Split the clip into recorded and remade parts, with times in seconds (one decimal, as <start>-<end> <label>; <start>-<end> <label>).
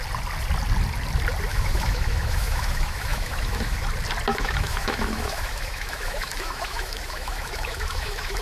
0.0-1.5 recorded; 1.5-3.9 remade; 3.9-4.3 recorded; 4.3-8.4 remade